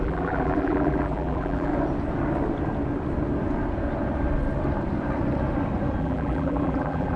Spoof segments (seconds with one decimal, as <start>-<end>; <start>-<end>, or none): 0.0-1.7; 6.0-7.2